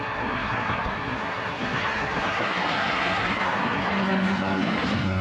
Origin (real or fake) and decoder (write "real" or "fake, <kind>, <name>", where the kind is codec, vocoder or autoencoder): fake, codec, SNAC